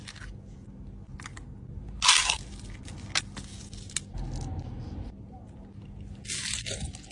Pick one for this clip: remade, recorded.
recorded